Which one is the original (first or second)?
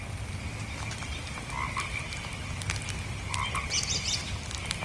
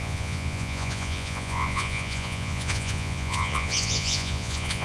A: first